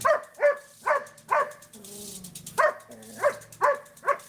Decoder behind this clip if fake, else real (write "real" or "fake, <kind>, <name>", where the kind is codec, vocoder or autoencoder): real